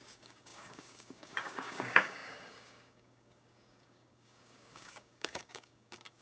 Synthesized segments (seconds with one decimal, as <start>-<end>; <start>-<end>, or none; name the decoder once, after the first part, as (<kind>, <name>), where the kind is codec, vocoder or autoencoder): 0.0-6.2 (codec, DAC)